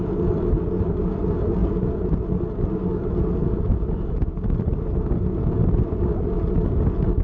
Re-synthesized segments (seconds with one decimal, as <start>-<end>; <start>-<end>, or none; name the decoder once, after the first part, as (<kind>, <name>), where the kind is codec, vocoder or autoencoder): none